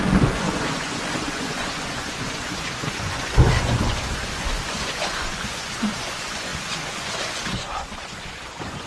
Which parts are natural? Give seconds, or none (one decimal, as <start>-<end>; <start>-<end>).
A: none